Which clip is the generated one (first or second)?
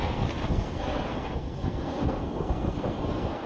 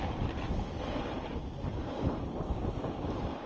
first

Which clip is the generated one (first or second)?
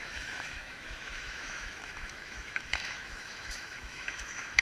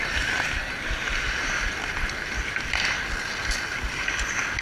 first